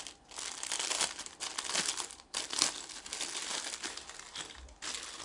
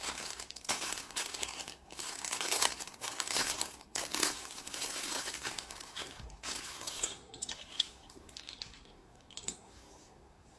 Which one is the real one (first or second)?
first